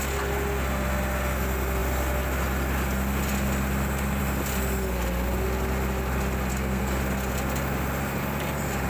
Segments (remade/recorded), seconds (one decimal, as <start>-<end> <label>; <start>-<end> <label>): 0.0-6.5 recorded; 6.5-7.0 remade; 7.0-8.9 recorded